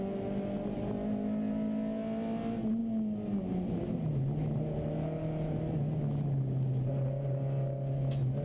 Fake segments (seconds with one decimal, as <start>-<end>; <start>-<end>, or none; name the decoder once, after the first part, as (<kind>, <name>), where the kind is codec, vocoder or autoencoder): none